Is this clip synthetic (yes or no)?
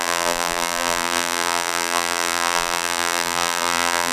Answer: yes